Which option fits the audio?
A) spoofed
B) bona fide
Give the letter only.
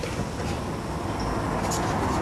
B